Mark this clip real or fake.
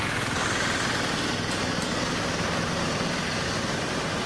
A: real